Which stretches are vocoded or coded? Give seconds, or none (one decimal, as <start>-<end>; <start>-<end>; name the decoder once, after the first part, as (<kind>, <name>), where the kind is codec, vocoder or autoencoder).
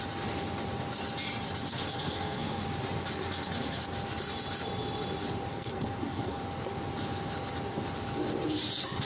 1.7-2.6 (codec, SNAC); 3.2-3.8; 5.5-6.4